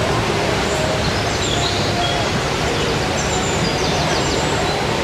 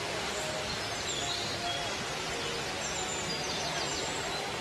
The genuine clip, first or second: second